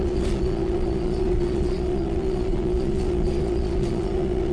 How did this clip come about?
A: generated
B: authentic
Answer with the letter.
A